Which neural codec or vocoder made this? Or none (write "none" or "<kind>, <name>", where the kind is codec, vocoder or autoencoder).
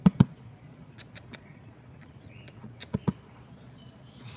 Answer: vocoder, Vocos